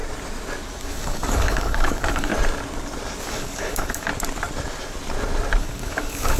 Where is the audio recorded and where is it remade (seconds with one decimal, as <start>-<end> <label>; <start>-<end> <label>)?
0.0-0.8 recorded; 0.8-2.3 remade; 2.3-3.2 recorded; 3.2-4.1 remade; 4.1-5.6 recorded; 5.6-6.4 remade